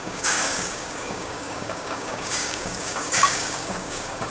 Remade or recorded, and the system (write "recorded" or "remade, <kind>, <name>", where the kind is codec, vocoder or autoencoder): remade, codec, DAC